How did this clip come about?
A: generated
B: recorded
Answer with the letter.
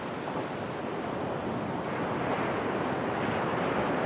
B